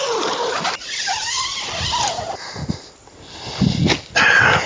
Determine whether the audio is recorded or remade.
recorded